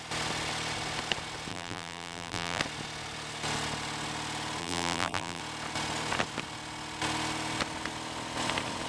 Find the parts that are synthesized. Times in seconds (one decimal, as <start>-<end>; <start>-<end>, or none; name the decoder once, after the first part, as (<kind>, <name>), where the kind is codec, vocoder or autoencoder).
1.5-2.6 (vocoder, BigVGAN v2); 4.6-5.4